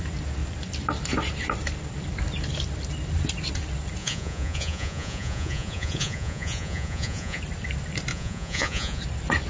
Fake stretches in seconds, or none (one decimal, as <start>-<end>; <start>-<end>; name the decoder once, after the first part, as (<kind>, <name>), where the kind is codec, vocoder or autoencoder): 4.0-7.4 (vocoder, Vocos); 8.1-9.0